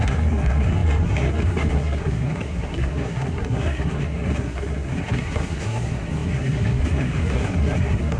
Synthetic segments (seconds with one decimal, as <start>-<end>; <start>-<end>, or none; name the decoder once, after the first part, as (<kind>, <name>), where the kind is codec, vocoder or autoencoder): 0.0-8.2 (codec, SNAC)